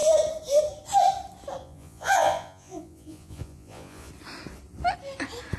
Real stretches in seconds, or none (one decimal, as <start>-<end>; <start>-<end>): 0.0-1.6; 4.1-5.6